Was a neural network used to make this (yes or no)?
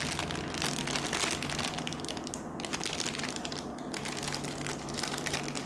no